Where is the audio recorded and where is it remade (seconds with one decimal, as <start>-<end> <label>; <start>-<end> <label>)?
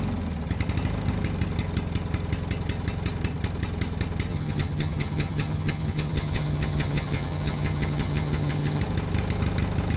0.0-4.3 recorded; 4.3-8.8 remade; 8.8-10.0 recorded